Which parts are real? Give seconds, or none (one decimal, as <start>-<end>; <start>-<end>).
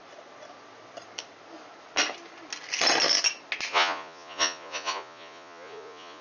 0.0-3.7